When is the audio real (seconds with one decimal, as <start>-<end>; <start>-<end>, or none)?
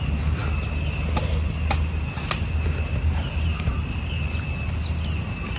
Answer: 0.0-5.6